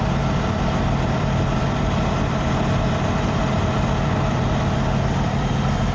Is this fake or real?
fake